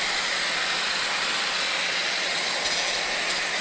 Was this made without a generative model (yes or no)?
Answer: yes